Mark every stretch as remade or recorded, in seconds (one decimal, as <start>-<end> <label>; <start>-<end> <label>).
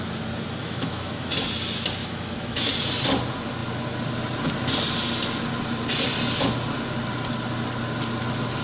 0.0-0.6 recorded; 0.6-1.3 remade; 1.3-2.0 recorded; 2.0-2.7 remade; 2.7-8.6 recorded